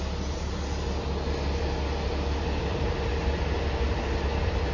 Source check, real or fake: real